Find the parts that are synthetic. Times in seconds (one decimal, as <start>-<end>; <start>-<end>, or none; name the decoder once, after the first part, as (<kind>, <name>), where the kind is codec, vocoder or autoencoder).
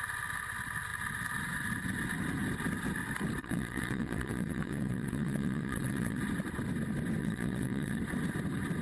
3.4-6.2 (vocoder, WaveNeXt); 7.2-8.0